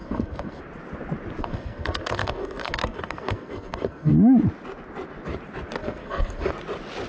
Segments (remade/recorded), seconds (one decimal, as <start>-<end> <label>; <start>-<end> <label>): 0.0-0.6 remade; 0.6-1.4 recorded; 1.4-4.1 remade; 4.1-5.8 recorded; 5.8-6.5 remade; 6.5-7.1 recorded